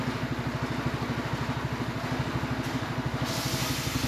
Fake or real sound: real